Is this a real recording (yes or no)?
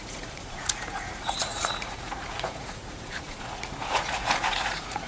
no